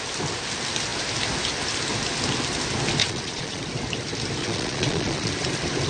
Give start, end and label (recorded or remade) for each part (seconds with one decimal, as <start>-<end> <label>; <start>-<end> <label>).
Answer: 0.0-3.0 recorded; 3.0-3.6 remade; 3.6-4.4 recorded; 4.4-5.3 remade; 5.3-5.9 recorded